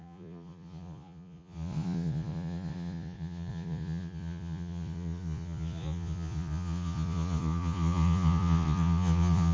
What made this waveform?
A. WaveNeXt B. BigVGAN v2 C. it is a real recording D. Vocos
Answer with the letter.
D